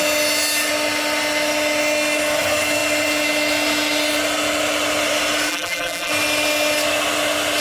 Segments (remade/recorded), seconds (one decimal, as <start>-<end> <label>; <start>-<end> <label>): 0.0-5.5 recorded; 5.5-6.1 remade; 6.1-7.6 recorded